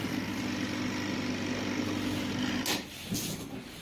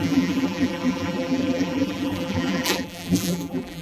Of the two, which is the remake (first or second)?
second